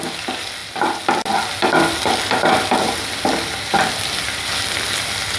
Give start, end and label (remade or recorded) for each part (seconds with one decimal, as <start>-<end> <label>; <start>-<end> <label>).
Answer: 0.0-5.4 recorded

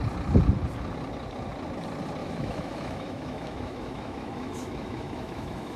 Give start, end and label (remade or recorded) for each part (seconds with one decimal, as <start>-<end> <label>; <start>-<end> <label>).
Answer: 0.0-2.2 recorded; 2.2-5.8 remade

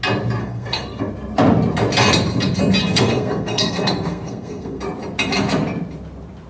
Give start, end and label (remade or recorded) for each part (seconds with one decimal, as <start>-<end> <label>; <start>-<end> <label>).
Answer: 0.0-0.4 recorded; 0.4-1.1 remade; 1.1-2.8 recorded; 2.8-4.8 remade; 4.8-6.5 recorded

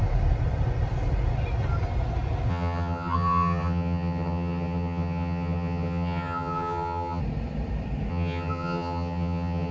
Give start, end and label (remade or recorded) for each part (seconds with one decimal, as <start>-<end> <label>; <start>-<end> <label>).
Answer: 0.0-2.5 recorded; 2.5-7.2 remade; 7.2-8.1 recorded; 8.1-9.7 remade

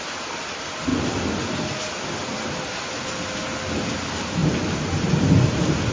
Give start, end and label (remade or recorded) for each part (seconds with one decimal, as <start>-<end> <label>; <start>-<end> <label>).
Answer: 0.0-0.9 remade; 0.9-3.2 recorded; 3.2-4.4 remade; 4.4-5.9 recorded

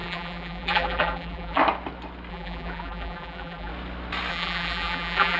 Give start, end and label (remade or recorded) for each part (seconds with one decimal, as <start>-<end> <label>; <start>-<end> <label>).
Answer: 0.0-1.6 remade; 1.6-2.3 recorded; 2.3-3.7 remade; 3.7-4.3 recorded; 4.3-5.4 remade

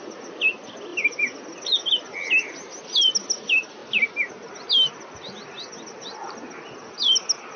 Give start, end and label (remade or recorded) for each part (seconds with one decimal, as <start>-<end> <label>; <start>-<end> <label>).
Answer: 0.0-7.6 recorded

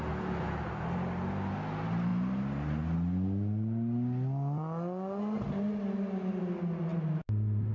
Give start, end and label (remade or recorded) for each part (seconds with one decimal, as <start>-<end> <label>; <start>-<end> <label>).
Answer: 0.0-7.7 recorded